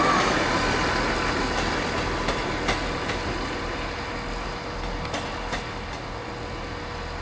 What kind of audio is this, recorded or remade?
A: recorded